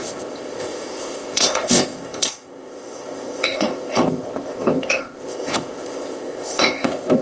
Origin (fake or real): fake